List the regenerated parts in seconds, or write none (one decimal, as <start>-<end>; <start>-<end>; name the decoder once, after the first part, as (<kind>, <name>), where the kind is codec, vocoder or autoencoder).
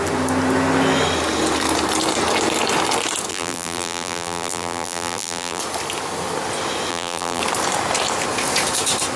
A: 3.3-5.6 (vocoder, BigVGAN v2); 6.9-7.4